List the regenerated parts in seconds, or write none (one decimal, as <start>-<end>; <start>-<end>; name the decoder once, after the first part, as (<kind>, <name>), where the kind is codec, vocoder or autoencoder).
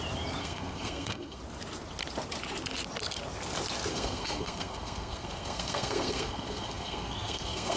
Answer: 0.4-1.4 (codec, SNAC); 3.9-7.8